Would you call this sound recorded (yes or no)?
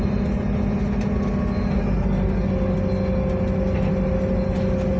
yes